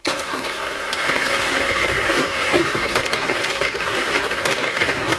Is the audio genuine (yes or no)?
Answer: no